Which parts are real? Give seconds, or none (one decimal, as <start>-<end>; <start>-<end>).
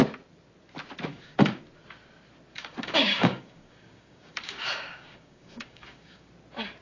0.0-1.1; 1.6-2.5; 6.3-6.8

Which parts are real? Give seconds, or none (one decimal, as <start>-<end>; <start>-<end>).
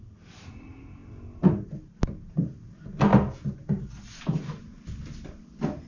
0.0-5.9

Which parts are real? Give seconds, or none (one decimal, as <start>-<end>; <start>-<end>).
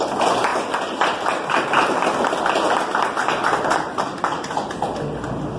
0.0-5.6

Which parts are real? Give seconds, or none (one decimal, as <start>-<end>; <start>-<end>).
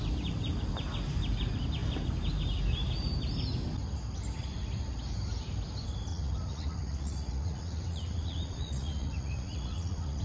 0.0-6.1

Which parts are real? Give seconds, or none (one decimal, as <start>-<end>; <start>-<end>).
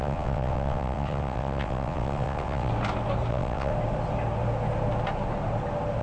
2.7-3.3; 3.7-6.0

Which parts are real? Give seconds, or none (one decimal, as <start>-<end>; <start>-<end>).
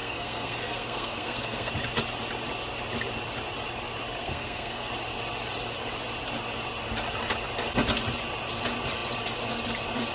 1.7-4.2; 4.9-10.1